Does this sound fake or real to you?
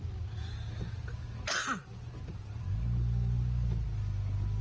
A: real